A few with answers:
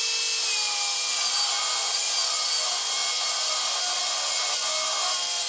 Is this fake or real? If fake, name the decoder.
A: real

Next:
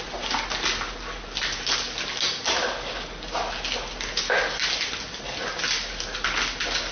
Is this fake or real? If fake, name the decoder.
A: real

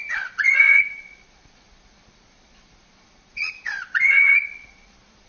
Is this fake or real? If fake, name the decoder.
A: fake, vocoder, Vocos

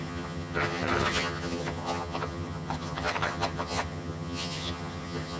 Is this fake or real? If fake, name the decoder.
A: fake, vocoder, HiFi-GAN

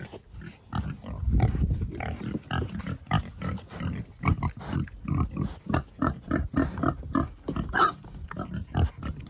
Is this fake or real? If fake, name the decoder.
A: real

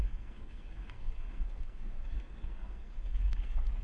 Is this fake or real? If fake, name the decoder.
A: fake, codec, SNAC